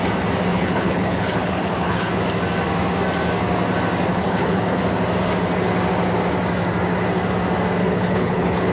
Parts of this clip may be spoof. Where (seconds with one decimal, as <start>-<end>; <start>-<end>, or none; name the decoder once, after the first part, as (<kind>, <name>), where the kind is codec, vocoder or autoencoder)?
0.5-2.1 (codec, HILCodec); 4.1-4.8; 7.8-8.7